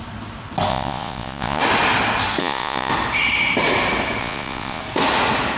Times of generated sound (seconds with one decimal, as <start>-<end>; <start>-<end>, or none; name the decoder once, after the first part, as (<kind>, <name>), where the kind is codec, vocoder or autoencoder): 0.7-1.6 (vocoder, Vocos); 2.4-2.9; 4.2-4.8